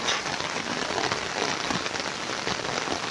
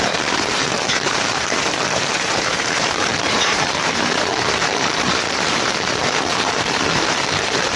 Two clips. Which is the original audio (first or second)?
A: first